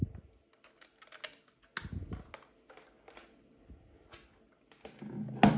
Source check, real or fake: real